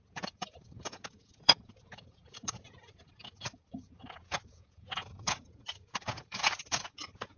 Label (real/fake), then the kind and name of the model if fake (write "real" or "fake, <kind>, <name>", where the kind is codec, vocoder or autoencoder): fake, vocoder, Vocos